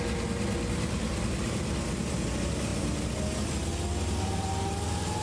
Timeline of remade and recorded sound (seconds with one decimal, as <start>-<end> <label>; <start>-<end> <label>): 0.0-5.2 recorded